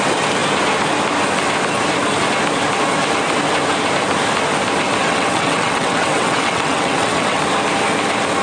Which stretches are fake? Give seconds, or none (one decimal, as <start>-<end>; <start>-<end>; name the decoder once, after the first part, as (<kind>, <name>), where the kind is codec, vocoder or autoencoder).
5.0-7.4 (vocoder, WaveNeXt)